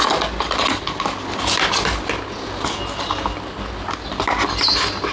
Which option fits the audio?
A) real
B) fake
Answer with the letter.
A